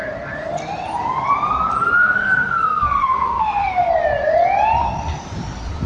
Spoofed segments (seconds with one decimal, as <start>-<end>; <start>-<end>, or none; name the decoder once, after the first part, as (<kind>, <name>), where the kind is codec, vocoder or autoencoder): 2.0-3.9 (codec, SNAC)